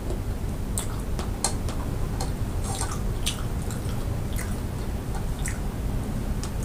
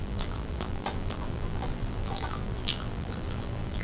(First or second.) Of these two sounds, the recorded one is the first